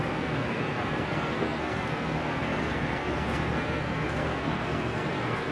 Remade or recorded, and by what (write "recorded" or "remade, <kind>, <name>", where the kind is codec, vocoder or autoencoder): remade, codec, SNAC